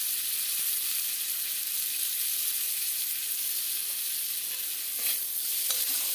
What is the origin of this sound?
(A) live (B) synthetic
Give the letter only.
A